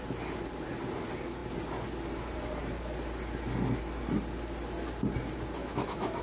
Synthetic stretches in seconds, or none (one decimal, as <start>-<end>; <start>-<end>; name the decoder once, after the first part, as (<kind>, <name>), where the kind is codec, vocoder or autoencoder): 5.6-6.2 (autoencoder, DAC-VAE)